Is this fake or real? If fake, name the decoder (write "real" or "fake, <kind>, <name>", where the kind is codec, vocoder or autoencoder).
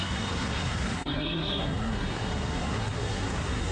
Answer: fake, codec, SNAC